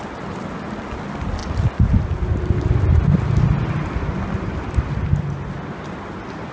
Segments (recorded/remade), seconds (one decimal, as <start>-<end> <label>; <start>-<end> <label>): 0.0-6.5 recorded